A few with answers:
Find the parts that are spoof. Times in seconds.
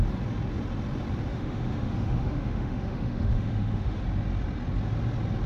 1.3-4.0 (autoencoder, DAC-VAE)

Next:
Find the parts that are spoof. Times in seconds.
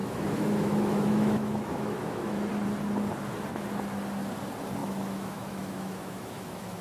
0.0-2.5 (autoencoder, DAC-VAE); 4.8-6.8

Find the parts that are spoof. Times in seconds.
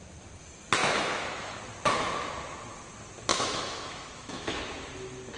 0.8-1.6 (autoencoder, DAC-VAE); 3.3-4.6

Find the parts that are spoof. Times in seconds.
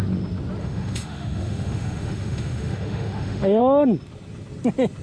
0.6-3.6 (autoencoder, DAC-VAE)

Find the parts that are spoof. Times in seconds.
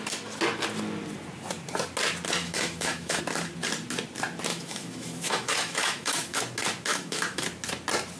2.4-3.2 (autoencoder, DAC-VAE); 4.5-6.4; 6.9-7.4